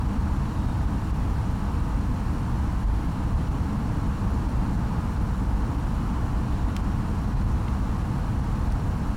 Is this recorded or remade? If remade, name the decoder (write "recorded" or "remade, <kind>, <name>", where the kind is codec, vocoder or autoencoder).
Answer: recorded